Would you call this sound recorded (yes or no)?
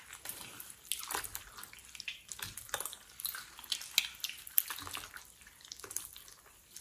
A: yes